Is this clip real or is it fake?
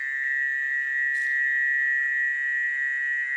real